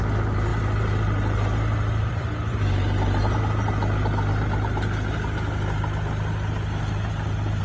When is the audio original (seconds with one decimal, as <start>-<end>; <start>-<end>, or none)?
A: 0.0-0.5; 3.3-6.8